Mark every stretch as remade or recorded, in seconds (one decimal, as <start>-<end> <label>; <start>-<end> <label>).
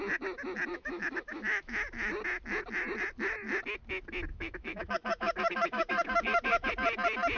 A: 0.0-0.7 recorded; 0.7-2.1 remade; 2.1-4.3 recorded; 4.3-6.7 remade; 6.7-7.4 recorded